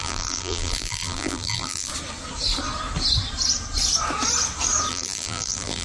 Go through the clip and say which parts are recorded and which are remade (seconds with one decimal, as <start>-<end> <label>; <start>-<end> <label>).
0.0-1.9 remade; 1.9-4.9 recorded; 4.9-5.8 remade